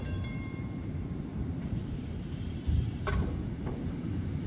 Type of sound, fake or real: fake